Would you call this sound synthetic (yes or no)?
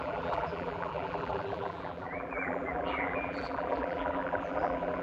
yes